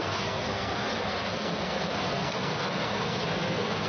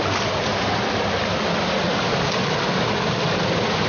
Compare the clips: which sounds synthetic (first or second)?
first